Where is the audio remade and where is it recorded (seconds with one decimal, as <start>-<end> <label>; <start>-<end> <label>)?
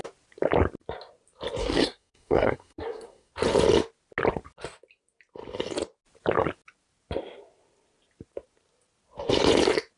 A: 0.0-1.6 recorded; 1.6-3.3 remade; 3.3-10.0 recorded